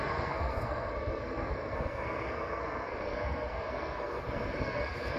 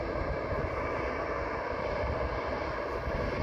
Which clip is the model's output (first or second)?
first